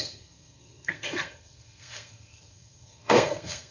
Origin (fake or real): fake